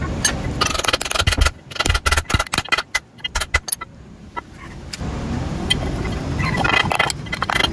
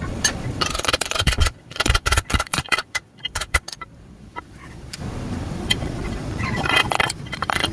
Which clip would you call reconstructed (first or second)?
second